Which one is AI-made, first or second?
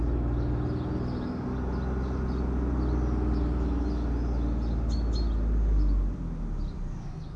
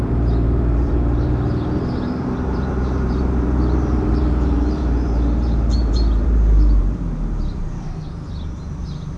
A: second